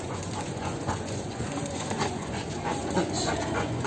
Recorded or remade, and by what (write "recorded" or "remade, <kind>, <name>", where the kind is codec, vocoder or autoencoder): remade, vocoder, Vocos